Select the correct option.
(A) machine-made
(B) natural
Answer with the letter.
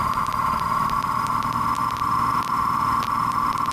A